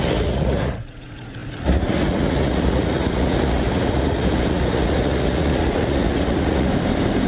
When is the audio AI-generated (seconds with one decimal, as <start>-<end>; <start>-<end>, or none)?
0.0-6.7